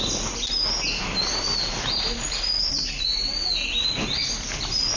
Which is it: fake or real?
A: real